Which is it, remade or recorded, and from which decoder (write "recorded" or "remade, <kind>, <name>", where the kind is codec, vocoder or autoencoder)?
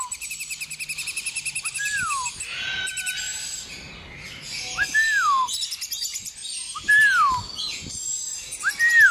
recorded